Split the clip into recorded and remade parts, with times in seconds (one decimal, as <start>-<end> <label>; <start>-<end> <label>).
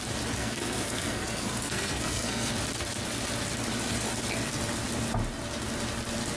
0.0-0.4 recorded; 0.4-2.5 remade; 2.5-6.4 recorded